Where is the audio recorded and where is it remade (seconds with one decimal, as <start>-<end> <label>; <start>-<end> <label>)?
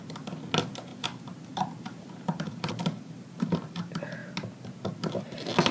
0.0-0.9 recorded; 0.9-2.7 remade; 2.7-5.7 recorded